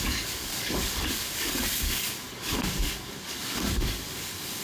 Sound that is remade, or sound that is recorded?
remade